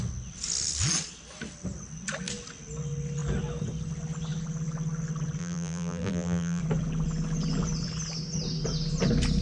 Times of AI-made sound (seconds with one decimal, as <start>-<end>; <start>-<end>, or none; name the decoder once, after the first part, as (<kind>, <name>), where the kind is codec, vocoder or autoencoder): 5.4-6.6 (vocoder, BigVGAN v2)